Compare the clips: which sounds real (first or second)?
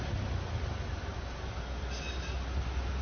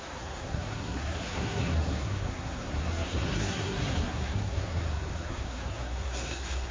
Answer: first